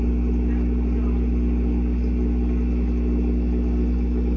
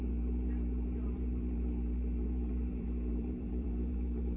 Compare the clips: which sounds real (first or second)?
first